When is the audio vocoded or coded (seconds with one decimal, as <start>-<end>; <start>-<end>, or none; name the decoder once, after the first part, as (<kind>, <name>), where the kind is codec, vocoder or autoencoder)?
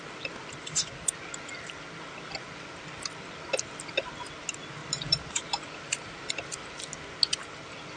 4.8-6.3 (vocoder, BigVGAN v2)